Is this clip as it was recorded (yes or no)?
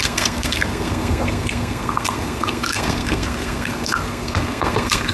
no